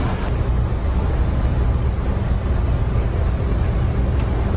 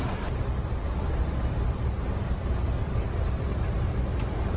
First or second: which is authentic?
first